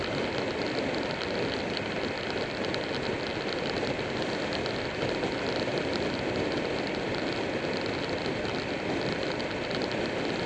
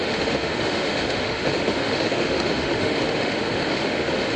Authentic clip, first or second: first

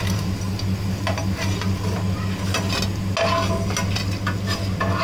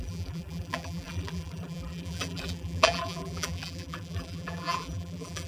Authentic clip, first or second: first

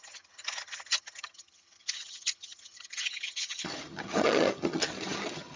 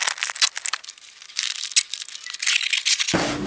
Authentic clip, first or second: second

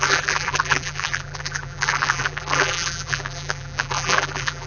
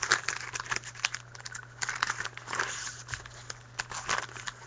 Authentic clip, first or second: second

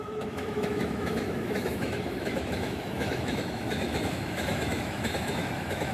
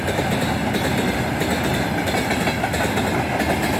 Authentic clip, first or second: second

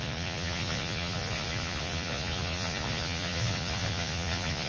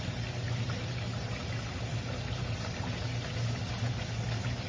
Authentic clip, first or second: second